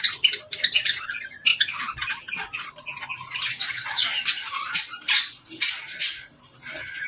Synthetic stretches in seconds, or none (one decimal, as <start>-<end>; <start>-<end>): none